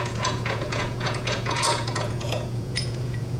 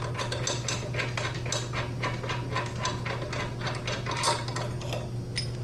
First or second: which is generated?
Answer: first